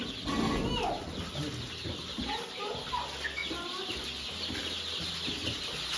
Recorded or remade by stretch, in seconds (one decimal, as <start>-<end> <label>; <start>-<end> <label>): 0.0-6.0 recorded